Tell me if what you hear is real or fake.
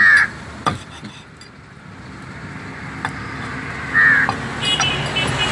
real